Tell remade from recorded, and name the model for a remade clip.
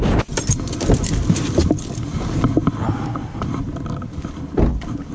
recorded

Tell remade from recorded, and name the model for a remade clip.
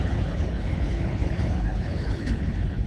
remade, codec, HILCodec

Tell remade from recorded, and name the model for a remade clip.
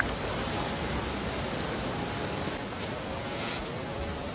recorded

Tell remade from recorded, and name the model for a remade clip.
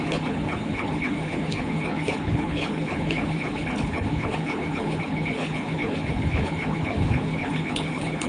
remade, codec, HILCodec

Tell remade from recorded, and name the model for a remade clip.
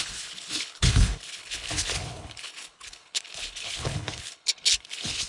remade, codec, HILCodec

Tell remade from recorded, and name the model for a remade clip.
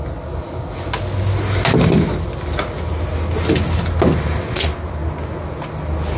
recorded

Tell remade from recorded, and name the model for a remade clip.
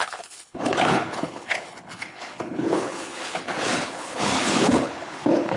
remade, codec, HILCodec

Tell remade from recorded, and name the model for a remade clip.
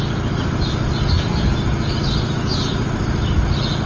recorded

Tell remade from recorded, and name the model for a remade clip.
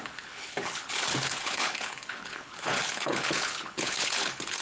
remade, codec, HILCodec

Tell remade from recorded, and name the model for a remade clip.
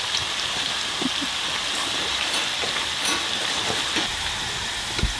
recorded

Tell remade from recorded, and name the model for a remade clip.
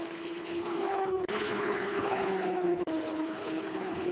remade, codec, HILCodec